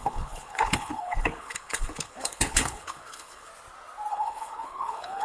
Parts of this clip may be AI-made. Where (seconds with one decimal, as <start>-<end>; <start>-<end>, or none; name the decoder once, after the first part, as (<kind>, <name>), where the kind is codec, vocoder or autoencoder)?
0.0-3.5 (codec, HILCodec); 4.1-5.2